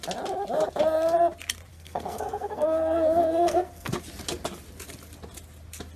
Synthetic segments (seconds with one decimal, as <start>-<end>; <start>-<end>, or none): 1.7-3.9

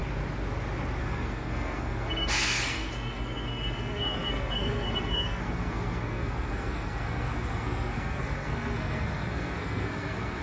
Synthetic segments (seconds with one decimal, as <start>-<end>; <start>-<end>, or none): 1.0-10.4

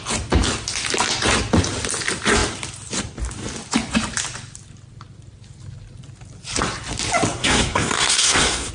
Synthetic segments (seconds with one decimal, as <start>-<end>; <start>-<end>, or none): 7.4-8.7

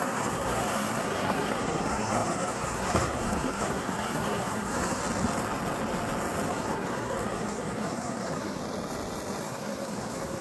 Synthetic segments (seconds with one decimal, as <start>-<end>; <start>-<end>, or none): 0.0-5.0; 6.5-8.6; 9.4-10.4

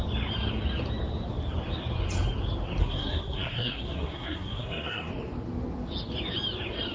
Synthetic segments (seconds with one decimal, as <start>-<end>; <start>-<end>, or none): 2.8-5.1

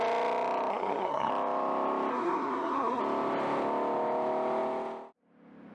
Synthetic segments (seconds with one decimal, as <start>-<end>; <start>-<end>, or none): 0.7-1.3; 2.1-3.0